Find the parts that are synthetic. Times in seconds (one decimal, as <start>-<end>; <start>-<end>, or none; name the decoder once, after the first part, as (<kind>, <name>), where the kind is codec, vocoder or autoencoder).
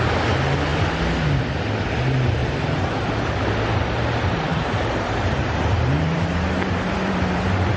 2.4-3.3 (vocoder, BigVGAN v2); 4.5-7.8